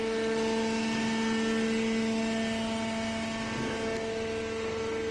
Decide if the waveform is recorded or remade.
recorded